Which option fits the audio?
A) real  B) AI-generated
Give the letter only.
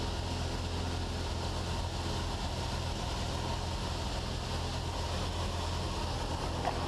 A